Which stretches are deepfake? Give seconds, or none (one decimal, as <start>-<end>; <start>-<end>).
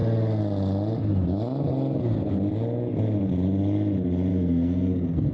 4.3-5.3